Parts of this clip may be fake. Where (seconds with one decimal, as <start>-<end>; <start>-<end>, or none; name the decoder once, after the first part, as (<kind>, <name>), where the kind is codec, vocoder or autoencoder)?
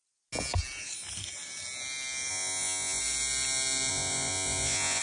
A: 2.3-3.0 (vocoder, Vocos); 3.9-5.0